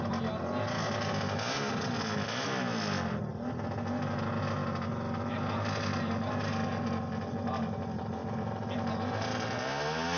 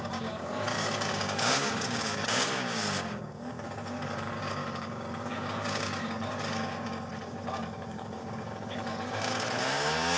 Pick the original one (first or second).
first